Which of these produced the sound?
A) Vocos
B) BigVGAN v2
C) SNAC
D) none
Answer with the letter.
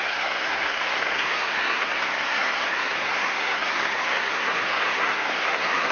C